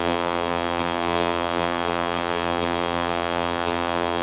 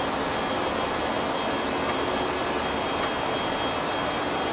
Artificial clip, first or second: first